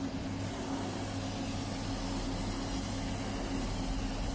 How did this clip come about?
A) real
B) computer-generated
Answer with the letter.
A